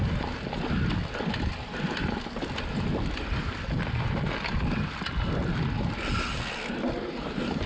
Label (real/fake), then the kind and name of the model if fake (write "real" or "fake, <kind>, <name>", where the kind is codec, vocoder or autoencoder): real